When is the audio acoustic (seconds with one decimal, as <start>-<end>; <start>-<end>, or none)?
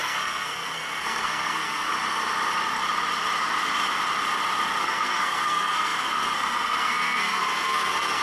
1.9-4.8